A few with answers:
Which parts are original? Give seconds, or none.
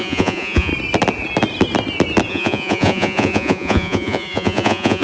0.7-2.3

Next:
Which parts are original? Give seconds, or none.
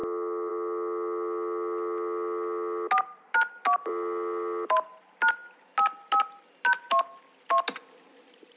0.0-8.6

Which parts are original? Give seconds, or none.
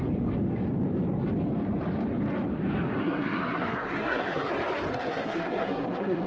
0.0-3.0; 4.5-4.9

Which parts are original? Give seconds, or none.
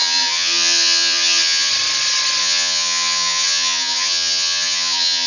1.7-2.4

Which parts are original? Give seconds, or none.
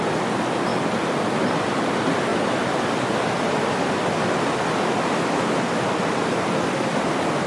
0.0-7.5